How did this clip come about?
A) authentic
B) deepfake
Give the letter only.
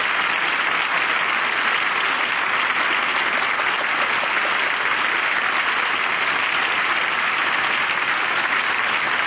A